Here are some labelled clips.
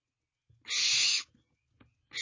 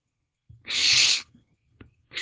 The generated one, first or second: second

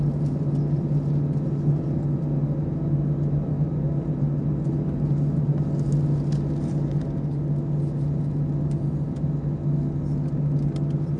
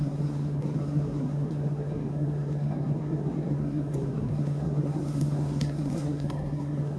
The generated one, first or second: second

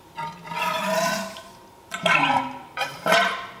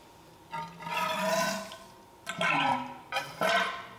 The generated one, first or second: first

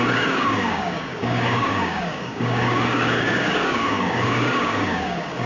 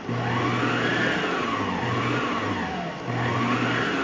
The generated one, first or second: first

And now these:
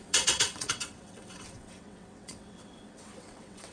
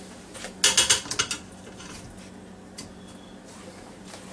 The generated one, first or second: first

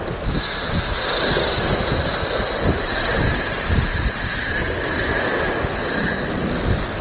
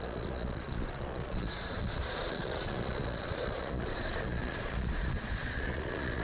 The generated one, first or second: second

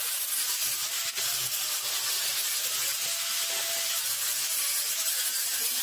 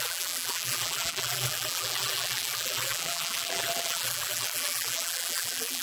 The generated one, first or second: second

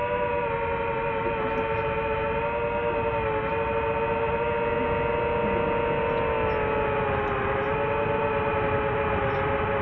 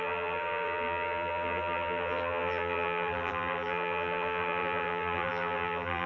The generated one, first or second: second